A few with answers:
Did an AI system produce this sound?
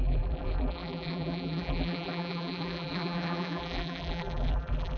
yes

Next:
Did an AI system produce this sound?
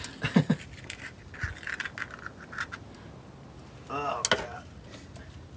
no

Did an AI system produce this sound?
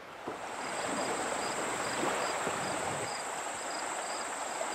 yes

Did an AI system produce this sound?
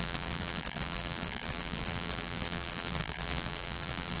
yes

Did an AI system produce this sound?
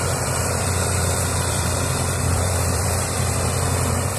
yes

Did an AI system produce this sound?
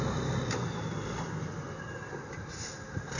no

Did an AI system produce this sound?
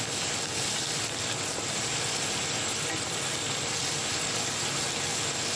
no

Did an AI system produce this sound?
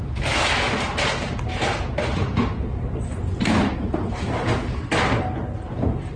no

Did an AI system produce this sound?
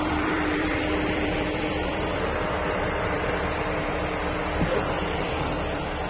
yes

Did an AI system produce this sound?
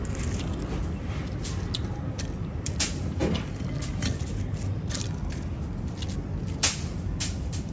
no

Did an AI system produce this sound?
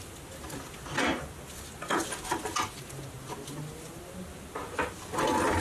no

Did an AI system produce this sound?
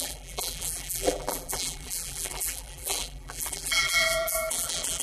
yes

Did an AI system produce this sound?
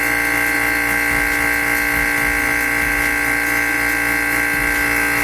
no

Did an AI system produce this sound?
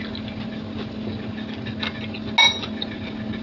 no